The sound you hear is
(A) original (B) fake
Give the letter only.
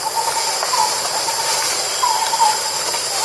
B